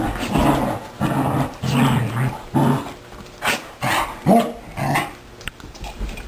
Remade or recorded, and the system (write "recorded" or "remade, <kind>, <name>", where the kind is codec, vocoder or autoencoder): recorded